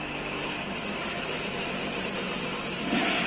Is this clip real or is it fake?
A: fake